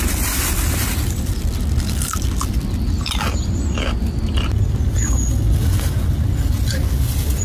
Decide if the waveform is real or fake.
real